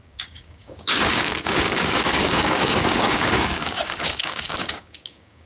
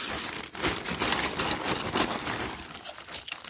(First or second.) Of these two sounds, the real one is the second